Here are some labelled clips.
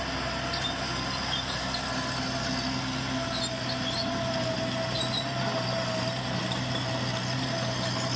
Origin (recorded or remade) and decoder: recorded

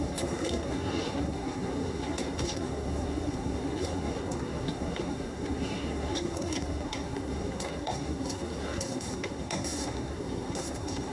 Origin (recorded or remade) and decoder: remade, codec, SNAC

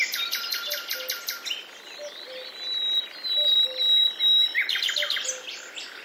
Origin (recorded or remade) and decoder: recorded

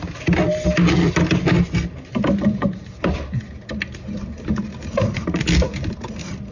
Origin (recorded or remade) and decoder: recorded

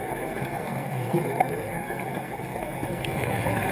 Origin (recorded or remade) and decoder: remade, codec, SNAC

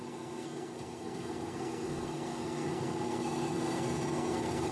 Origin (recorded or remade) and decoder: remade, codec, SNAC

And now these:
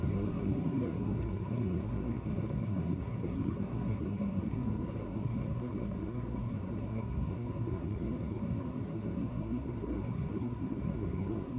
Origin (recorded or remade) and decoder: remade, codec, SNAC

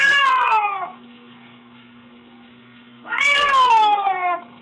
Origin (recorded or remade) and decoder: remade, codec, SNAC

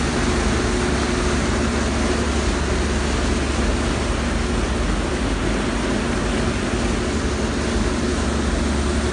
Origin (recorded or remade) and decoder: recorded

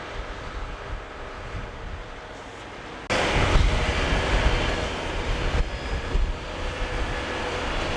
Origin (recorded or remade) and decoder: recorded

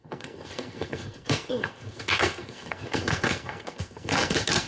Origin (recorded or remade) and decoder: remade, codec, SNAC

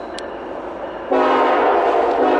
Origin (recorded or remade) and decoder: recorded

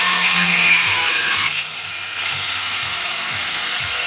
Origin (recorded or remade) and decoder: remade, codec, SNAC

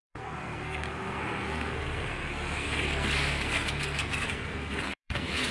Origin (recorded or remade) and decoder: remade, codec, SNAC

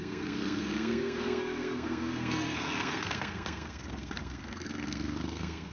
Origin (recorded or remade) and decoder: remade, codec, SNAC